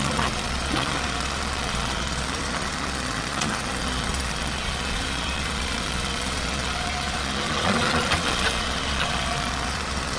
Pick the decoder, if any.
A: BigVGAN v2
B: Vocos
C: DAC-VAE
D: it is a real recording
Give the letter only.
B